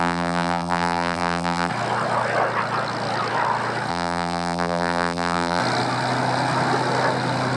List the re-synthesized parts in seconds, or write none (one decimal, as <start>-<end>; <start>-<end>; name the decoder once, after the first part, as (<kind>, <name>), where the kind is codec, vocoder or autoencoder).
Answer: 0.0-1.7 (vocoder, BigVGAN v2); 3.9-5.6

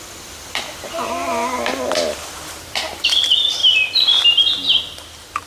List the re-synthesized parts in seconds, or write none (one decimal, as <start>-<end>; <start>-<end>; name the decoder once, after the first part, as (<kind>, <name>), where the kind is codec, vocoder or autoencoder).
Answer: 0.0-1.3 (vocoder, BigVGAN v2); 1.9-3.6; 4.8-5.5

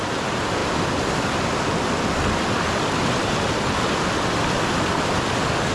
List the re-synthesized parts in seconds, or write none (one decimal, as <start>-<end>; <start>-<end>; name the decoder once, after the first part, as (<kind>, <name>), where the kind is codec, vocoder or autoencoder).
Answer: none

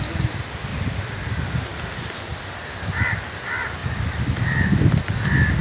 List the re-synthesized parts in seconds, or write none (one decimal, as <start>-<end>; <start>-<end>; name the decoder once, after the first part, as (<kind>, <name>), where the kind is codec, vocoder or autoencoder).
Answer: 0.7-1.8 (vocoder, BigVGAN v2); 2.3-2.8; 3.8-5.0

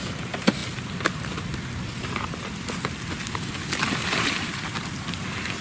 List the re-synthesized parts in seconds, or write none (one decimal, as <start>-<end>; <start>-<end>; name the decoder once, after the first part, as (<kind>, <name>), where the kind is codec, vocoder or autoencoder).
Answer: 0.0-0.6 (vocoder, BigVGAN v2); 4.0-5.6

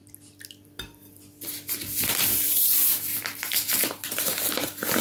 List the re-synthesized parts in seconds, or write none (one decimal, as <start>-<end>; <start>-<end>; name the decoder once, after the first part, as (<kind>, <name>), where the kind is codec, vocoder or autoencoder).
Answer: 2.0-5.0 (vocoder, BigVGAN v2)